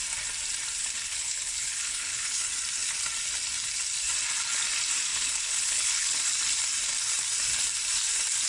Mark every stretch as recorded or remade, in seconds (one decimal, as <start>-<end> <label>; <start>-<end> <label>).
0.0-0.8 recorded; 0.8-2.4 remade; 2.4-5.1 recorded; 5.1-6.2 remade; 6.2-8.5 recorded